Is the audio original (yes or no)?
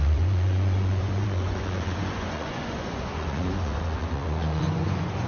no